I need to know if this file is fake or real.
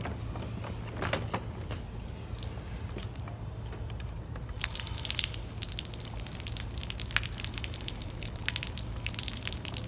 real